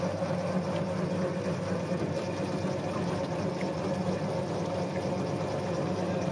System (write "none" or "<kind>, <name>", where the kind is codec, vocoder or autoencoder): none